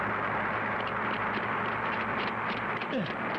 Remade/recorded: recorded